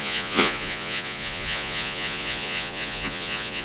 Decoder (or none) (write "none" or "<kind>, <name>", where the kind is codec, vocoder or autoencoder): vocoder, Vocos